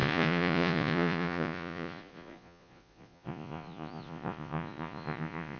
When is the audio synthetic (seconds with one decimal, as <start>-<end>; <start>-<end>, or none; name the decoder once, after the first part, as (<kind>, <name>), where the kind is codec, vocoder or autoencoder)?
0.0-5.6 (vocoder, Vocos)